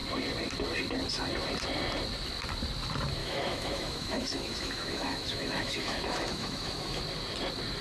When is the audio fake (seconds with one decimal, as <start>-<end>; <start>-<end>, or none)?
3.2-7.0